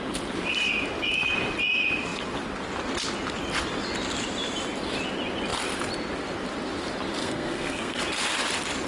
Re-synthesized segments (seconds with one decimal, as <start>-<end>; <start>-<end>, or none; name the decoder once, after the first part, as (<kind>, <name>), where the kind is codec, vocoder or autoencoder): 7.2-8.0 (codec, SNAC)